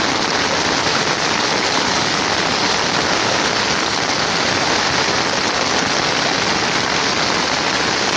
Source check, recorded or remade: recorded